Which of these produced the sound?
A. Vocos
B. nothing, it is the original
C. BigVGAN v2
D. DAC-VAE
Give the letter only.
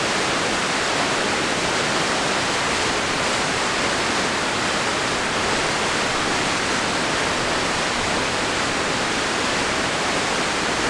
B